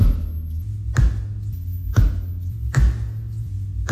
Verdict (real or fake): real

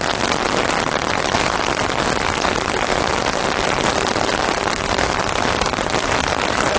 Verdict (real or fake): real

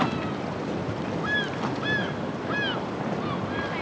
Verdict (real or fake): real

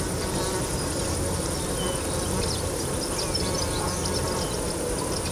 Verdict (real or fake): real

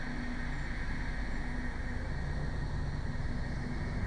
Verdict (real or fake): real